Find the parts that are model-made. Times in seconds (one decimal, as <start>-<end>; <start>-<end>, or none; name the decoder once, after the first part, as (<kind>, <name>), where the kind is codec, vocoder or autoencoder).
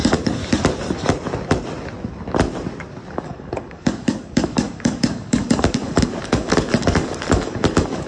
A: 0.0-0.4 (codec, DAC); 3.1-8.1